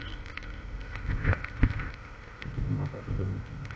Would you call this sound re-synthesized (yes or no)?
yes